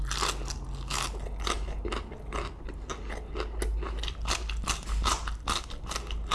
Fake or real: real